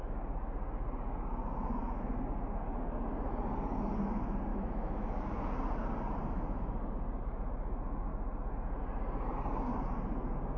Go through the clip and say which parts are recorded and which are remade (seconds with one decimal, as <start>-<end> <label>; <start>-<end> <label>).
0.0-4.5 recorded; 4.5-5.2 remade; 5.2-10.6 recorded